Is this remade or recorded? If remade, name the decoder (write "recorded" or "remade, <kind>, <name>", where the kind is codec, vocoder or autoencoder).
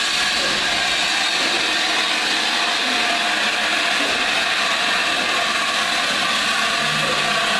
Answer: recorded